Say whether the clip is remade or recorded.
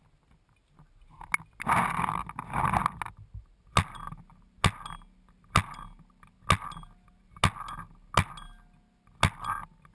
recorded